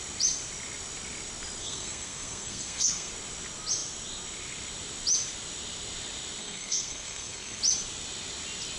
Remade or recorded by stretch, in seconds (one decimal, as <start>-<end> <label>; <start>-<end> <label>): 0.0-1.6 recorded; 1.6-3.1 remade; 3.1-6.4 recorded; 6.4-7.6 remade; 7.6-8.8 recorded